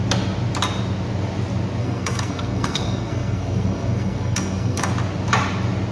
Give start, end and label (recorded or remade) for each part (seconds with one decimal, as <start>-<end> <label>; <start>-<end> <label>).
0.0-1.8 recorded; 1.8-4.9 remade; 4.9-5.9 recorded